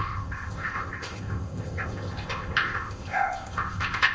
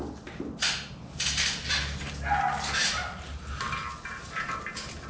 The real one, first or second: second